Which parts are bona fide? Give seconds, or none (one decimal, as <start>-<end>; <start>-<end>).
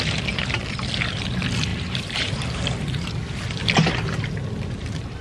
0.0-1.7; 3.1-5.2